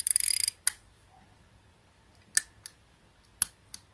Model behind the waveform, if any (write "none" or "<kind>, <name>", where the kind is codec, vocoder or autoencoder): none